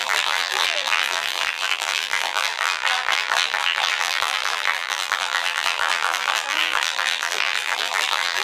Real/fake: fake